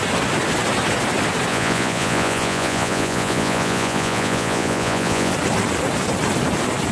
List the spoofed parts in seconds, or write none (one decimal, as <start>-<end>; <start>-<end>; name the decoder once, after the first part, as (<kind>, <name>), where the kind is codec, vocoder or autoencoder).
1.5-5.3 (vocoder, Vocos)